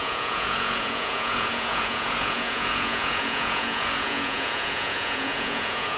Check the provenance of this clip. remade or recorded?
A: remade